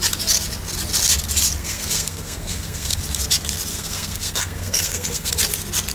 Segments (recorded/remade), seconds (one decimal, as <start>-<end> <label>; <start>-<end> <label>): 0.0-1.6 recorded; 1.6-3.0 remade; 3.0-3.7 recorded; 3.7-5.3 remade; 5.3-5.9 recorded